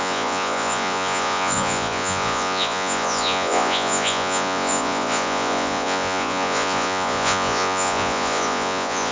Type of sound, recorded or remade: remade